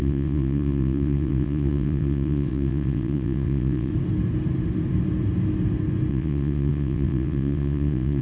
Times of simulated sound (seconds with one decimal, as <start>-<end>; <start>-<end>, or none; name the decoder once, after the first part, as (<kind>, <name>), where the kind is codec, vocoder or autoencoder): 0.0-3.9 (vocoder, WaveNeXt); 6.1-8.2